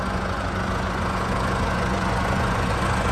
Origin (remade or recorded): remade